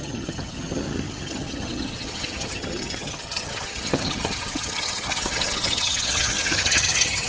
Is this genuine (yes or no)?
no